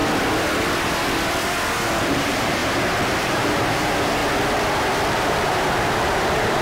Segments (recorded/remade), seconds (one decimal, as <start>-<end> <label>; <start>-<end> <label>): 0.0-2.0 recorded; 2.0-2.6 remade; 2.6-3.2 recorded; 3.2-4.2 remade; 4.2-5.1 recorded; 5.1-6.6 remade